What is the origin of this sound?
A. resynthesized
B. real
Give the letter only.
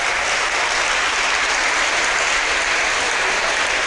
B